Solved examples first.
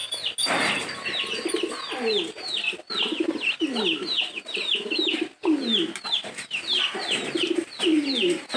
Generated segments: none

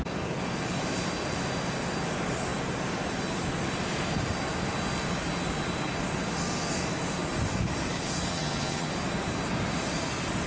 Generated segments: 8.3-8.9 (vocoder, HiFi-GAN)

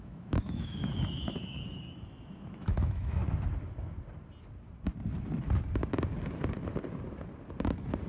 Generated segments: 0.0-3.2 (autoencoder, DAC-VAE)

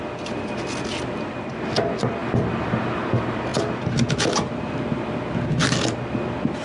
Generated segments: none

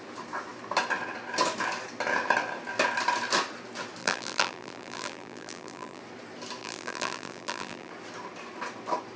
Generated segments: 4.0-6.0 (vocoder, BigVGAN v2); 6.6-7.9